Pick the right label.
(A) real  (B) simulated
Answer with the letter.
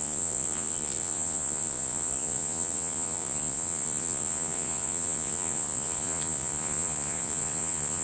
B